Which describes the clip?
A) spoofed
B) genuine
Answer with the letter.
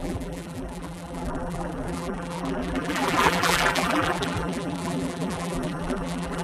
A